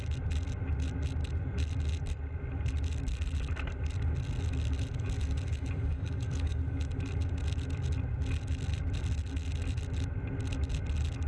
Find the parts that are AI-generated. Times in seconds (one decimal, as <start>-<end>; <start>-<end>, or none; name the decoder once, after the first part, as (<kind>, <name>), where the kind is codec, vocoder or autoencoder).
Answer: 5.9-6.6 (codec, DAC)